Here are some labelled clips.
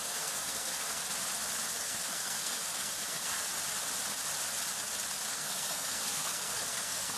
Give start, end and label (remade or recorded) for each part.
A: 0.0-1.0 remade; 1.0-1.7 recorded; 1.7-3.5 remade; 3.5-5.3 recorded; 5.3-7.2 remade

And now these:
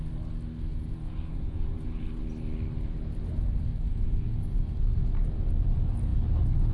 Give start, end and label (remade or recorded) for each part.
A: 0.0-0.7 recorded; 0.7-2.2 remade; 2.2-3.7 recorded; 3.7-5.0 remade; 5.0-6.7 recorded

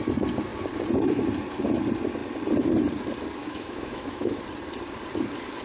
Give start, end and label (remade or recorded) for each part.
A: 0.0-3.4 recorded; 3.4-4.4 remade; 4.4-5.6 recorded

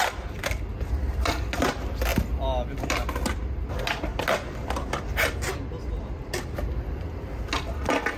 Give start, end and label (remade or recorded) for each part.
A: 0.0-8.2 recorded